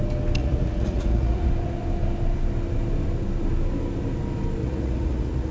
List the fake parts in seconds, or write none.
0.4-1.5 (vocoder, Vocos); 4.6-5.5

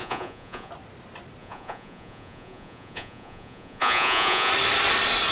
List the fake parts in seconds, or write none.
0.0-0.7 (vocoder, Vocos); 1.4-4.5

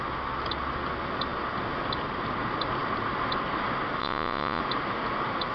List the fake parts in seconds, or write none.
4.0-4.6 (vocoder, Vocos)

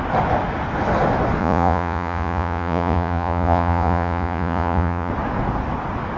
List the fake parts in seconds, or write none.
1.4-5.1 (vocoder, Vocos)

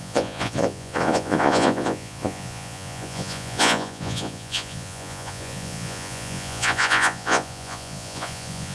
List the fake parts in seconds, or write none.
0.0-8.7 (vocoder, Vocos)